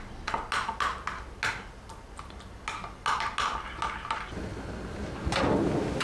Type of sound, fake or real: real